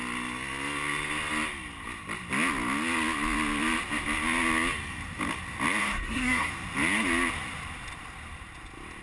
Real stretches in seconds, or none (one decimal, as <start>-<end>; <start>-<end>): 0.0-5.8; 6.5-9.0

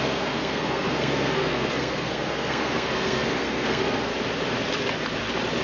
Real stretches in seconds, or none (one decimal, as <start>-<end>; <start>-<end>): 4.1-5.6

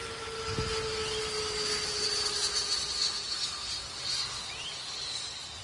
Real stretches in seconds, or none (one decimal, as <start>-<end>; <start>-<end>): 0.0-5.6